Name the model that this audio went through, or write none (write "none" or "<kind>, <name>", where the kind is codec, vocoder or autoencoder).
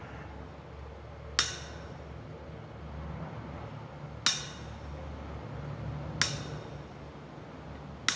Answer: none